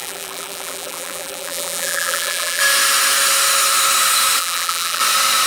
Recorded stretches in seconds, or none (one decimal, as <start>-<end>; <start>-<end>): 2.6-4.4; 5.0-5.5